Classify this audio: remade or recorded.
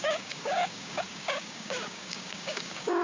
remade